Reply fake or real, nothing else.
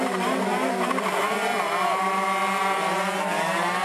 real